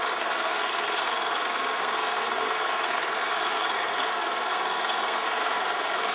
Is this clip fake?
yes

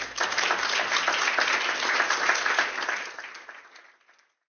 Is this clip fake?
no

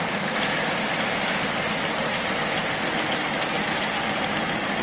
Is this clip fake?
no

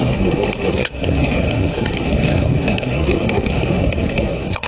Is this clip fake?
yes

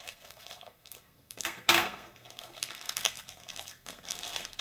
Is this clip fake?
yes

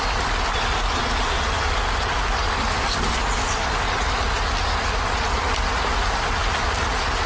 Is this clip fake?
no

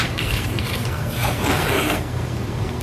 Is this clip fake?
yes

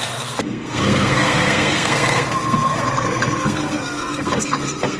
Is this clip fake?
yes